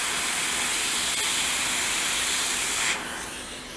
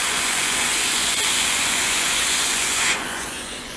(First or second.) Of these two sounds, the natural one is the first